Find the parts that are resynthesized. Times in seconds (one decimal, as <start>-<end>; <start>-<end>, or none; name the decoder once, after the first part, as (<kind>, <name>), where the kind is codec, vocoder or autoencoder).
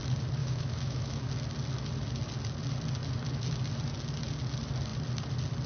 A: 0.4-1.3 (autoencoder, DAC-VAE)